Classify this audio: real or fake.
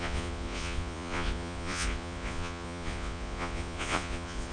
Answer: fake